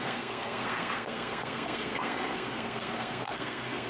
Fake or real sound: fake